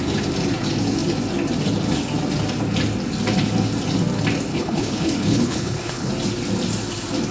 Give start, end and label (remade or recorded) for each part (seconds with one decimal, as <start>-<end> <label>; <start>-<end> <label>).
0.0-4.5 recorded; 4.5-6.1 remade; 6.1-7.3 recorded